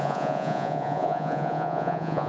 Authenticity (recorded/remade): remade